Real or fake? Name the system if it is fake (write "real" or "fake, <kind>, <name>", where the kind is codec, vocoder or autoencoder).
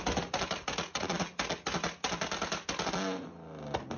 real